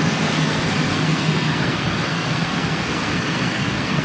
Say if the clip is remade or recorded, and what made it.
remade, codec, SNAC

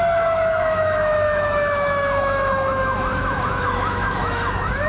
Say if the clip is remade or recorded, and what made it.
remade, autoencoder, DAC-VAE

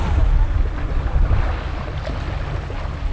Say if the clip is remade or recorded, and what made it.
recorded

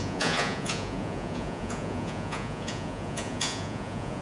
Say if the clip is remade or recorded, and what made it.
remade, vocoder, Vocos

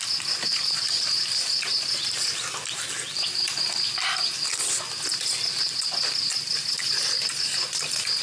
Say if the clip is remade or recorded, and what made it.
recorded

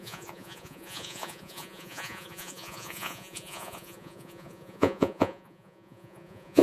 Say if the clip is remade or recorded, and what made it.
remade, vocoder, Vocos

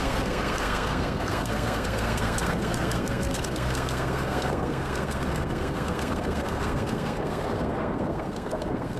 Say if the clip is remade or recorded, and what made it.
remade, codec, SNAC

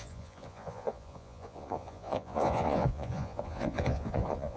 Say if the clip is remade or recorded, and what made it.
remade, vocoder, Vocos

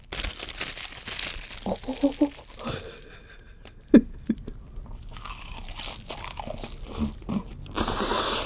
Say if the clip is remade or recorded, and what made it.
recorded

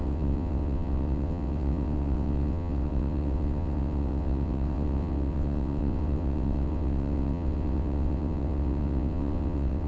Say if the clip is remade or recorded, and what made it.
remade, vocoder, WaveNeXt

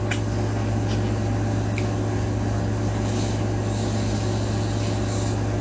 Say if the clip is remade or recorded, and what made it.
recorded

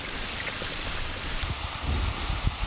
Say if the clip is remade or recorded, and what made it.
recorded